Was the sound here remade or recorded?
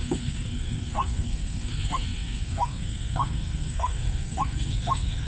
remade